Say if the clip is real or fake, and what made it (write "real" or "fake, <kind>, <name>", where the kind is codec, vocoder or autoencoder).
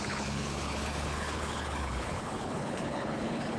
fake, codec, HILCodec